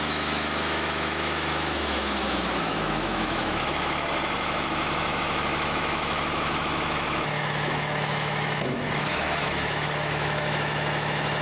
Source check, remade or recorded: remade